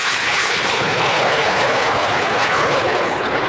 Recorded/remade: remade